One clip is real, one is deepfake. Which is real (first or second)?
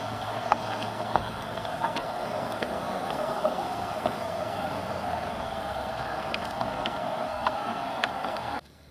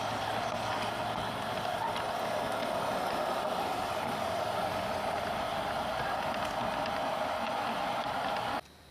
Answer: second